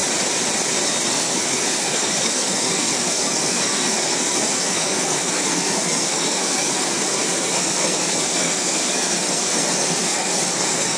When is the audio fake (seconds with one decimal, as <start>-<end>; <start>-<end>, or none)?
1.1-11.0